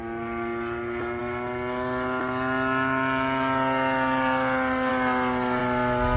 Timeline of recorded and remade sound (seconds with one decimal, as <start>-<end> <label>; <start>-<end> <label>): 0.0-6.2 recorded